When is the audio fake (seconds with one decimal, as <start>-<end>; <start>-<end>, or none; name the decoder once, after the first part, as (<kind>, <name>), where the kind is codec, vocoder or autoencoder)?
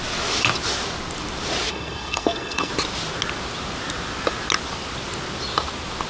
1.7-2.7 (codec, SNAC)